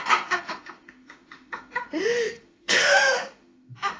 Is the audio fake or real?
fake